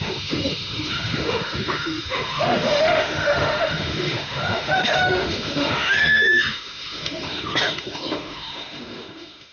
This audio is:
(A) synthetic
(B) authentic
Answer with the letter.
A